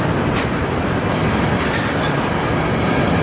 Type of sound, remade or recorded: recorded